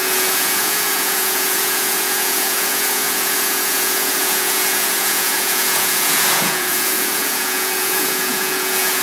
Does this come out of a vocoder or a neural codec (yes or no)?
yes